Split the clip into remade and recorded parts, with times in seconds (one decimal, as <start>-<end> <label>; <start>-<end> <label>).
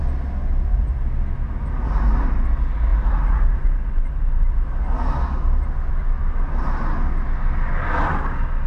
0.0-8.7 recorded